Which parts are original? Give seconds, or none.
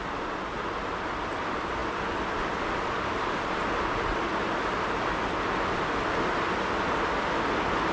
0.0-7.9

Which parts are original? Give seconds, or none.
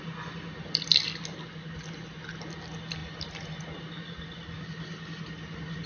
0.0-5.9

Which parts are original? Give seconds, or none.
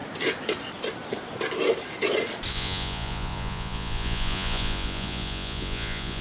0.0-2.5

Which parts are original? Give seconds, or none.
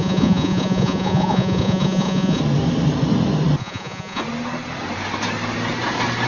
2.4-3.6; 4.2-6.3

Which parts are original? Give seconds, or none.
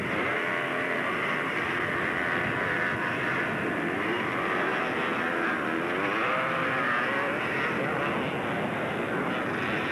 0.0-9.9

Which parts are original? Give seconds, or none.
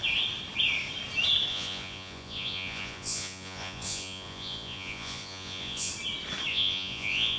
0.0-1.5; 5.9-6.5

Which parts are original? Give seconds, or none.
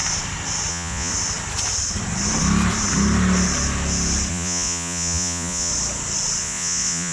0.0-0.7; 1.1-4.3; 5.7-6.4